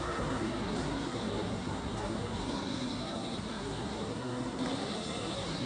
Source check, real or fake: fake